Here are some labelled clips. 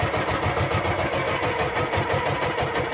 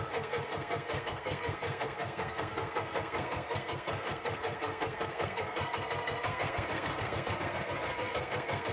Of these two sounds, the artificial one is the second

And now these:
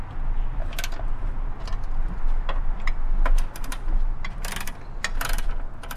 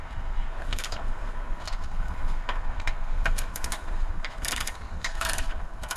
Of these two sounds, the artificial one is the second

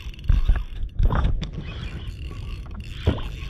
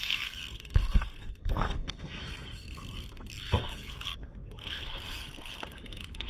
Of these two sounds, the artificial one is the second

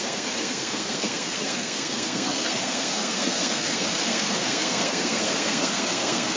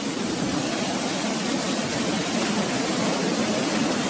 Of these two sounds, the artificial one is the first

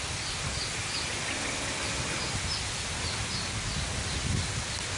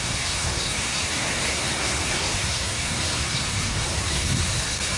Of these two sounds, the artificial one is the second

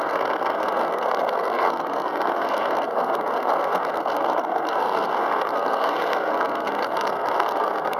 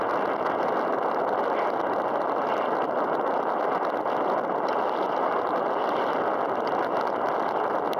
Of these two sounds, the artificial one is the first